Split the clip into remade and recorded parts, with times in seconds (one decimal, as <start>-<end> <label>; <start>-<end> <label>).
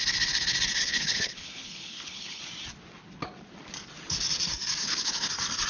0.0-0.8 recorded; 0.8-2.4 remade; 2.4-4.8 recorded; 4.8-5.3 remade; 5.3-5.7 recorded